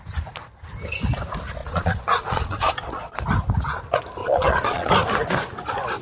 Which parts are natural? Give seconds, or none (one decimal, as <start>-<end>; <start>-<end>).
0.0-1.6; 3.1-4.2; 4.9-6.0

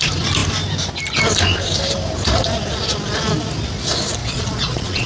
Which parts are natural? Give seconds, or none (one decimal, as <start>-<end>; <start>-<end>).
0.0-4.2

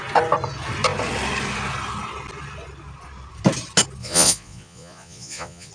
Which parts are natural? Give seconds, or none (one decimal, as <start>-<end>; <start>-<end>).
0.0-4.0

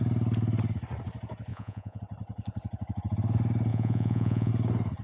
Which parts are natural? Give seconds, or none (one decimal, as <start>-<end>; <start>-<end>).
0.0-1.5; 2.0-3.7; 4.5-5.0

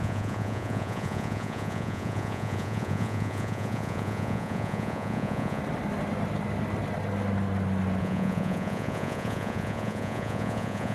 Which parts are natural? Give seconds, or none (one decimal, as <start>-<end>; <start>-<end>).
5.6-8.0